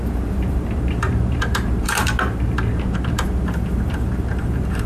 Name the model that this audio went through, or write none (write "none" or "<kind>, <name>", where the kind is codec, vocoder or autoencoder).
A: vocoder, BigVGAN v2